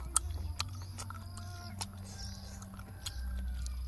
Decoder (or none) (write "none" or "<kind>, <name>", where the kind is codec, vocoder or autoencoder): none